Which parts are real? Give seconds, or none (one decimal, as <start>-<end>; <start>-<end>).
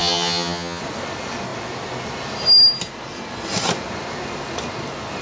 0.8-5.2